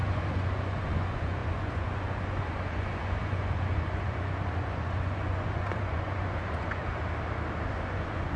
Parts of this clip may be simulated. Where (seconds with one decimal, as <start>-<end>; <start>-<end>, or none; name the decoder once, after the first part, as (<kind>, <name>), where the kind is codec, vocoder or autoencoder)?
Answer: 0.0-6.8 (vocoder, Vocos); 7.7-8.4